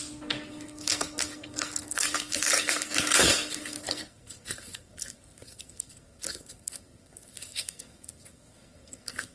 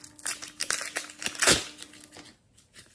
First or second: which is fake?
first